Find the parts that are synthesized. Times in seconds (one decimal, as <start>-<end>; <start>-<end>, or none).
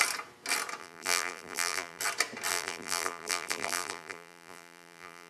0.8-2.0; 2.5-5.3